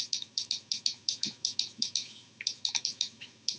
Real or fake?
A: fake